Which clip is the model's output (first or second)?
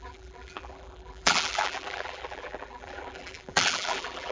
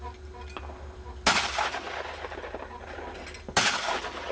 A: first